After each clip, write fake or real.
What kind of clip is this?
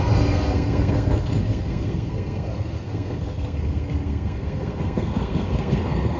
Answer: fake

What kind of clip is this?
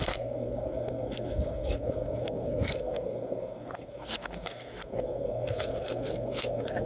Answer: fake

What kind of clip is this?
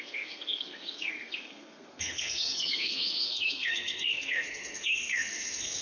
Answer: fake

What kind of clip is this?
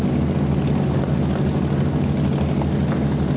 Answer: real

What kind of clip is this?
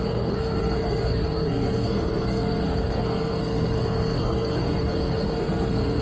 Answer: fake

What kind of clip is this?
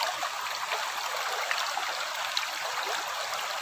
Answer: real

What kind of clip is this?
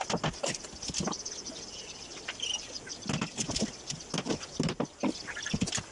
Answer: real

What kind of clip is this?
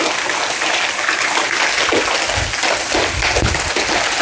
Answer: real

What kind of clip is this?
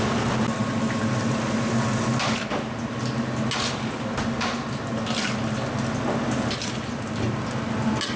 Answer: real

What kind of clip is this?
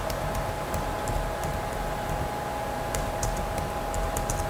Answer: real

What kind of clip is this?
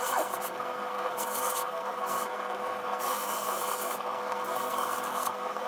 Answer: fake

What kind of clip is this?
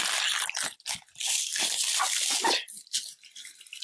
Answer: real